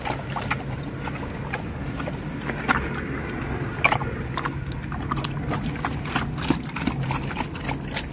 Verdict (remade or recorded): recorded